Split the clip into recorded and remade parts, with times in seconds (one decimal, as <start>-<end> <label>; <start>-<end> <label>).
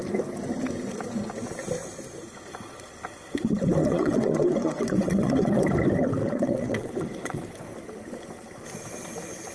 0.0-3.8 recorded; 3.8-5.7 remade; 5.7-6.2 recorded; 6.2-7.4 remade; 7.4-9.5 recorded